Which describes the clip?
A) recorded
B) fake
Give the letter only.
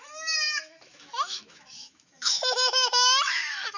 B